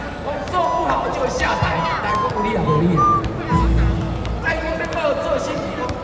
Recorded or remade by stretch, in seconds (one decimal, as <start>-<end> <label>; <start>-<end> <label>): 0.0-6.0 recorded